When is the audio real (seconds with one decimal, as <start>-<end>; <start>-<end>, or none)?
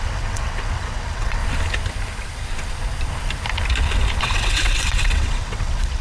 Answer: 1.4-4.2